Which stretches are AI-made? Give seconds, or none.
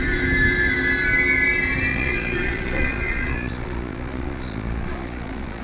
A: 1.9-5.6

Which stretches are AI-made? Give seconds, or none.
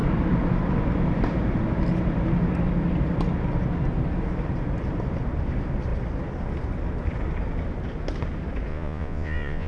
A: 8.7-9.7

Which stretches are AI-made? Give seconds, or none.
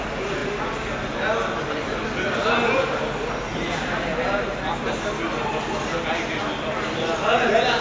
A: none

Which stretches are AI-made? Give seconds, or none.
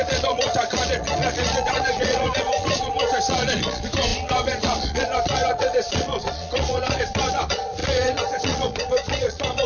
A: 0.0-9.7